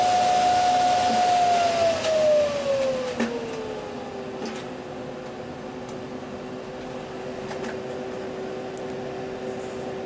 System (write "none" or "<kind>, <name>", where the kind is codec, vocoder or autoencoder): none